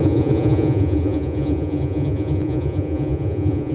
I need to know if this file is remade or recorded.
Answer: remade